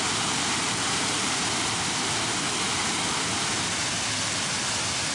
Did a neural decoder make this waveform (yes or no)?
no